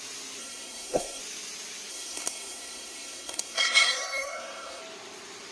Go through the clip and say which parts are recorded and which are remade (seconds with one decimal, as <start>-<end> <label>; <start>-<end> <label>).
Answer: 0.0-0.4 recorded; 0.4-1.2 remade; 1.2-1.9 recorded; 1.9-4.8 remade; 4.8-5.5 recorded